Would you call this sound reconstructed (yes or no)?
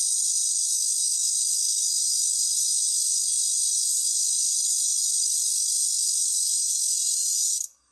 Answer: yes